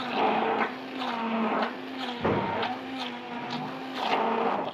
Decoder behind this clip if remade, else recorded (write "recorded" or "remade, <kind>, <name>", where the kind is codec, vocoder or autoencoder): recorded